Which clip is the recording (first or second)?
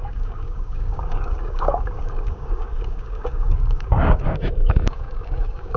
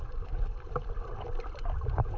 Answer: second